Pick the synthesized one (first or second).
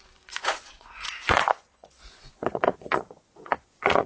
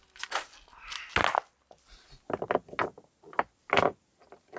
first